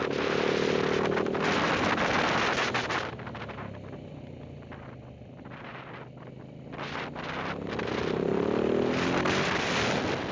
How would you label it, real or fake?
real